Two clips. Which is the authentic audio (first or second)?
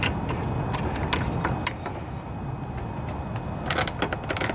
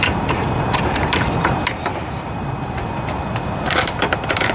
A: first